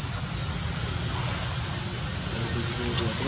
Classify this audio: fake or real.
real